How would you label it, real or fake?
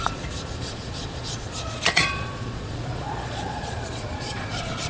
fake